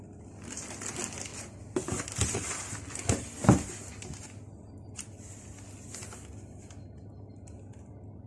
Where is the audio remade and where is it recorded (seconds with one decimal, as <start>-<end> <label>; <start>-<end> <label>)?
0.0-8.3 recorded